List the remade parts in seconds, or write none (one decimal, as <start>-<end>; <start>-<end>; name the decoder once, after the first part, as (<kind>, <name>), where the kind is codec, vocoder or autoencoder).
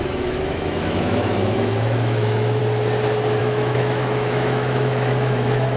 0.0-2.6 (autoencoder, DAC-VAE); 3.4-5.8